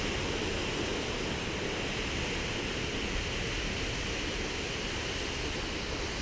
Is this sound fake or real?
real